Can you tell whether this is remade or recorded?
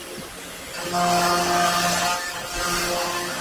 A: recorded